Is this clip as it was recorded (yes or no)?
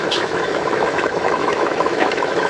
no